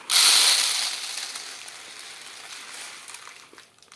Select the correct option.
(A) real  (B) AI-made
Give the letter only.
A